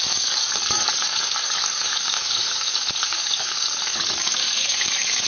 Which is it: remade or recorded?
remade